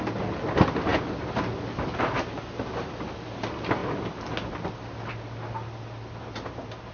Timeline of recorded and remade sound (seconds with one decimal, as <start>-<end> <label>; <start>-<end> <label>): 0.0-6.9 recorded